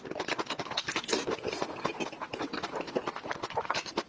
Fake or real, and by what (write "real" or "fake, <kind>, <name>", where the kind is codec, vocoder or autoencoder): real